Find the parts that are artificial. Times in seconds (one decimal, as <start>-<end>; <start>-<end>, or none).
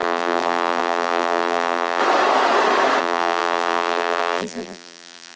0.0-2.0; 3.0-5.4